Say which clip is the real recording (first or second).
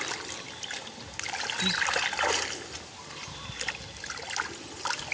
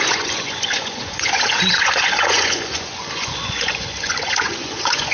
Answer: first